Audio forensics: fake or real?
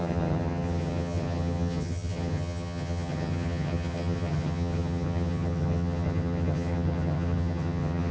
fake